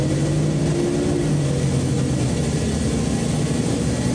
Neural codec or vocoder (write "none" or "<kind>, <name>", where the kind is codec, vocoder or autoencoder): none